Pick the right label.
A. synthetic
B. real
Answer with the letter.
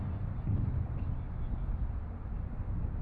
B